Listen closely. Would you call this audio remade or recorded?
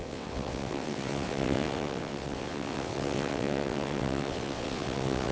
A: remade